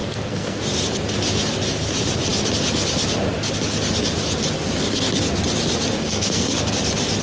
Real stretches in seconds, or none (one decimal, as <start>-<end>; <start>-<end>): 0.6-6.0; 6.6-7.2